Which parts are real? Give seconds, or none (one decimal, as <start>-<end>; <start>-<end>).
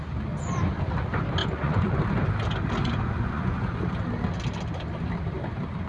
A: 0.0-1.4; 1.9-2.8; 3.9-5.9